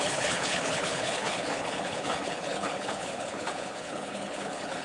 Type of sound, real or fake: fake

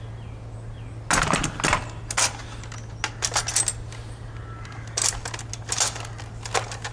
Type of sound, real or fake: real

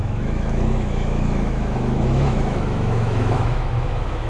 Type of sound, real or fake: fake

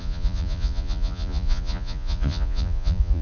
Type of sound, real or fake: fake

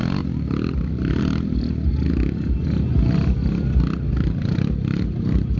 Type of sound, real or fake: real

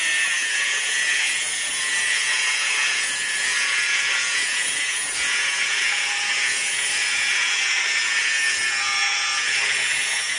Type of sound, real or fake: fake